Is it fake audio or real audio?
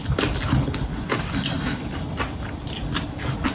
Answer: real